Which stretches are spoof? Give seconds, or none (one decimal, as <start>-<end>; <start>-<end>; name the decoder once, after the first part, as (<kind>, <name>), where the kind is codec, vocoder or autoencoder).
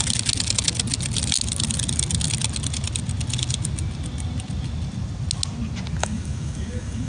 6.0-7.1 (codec, DAC)